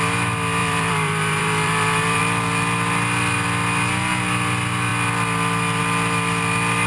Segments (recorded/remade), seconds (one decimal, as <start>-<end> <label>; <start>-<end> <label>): 0.0-0.6 recorded; 0.6-2.2 remade; 2.2-6.9 recorded